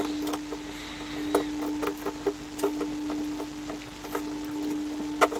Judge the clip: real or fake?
real